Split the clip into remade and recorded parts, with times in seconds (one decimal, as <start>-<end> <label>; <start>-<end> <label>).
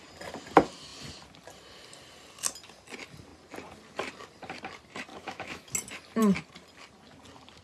0.0-5.1 recorded; 5.1-5.7 remade; 5.7-7.6 recorded